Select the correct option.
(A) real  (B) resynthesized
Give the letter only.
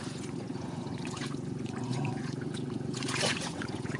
B